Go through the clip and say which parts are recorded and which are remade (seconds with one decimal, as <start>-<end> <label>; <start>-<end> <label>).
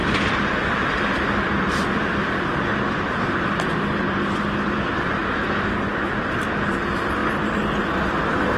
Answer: 0.0-5.2 remade; 5.2-6.2 recorded; 6.2-7.2 remade; 7.2-7.8 recorded; 7.8-8.6 remade